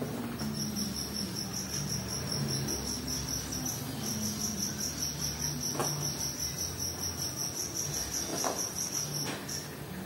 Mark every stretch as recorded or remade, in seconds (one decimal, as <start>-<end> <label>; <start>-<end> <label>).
0.0-10.1 recorded